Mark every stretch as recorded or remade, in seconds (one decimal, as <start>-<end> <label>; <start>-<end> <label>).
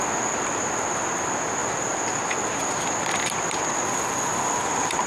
0.0-5.1 recorded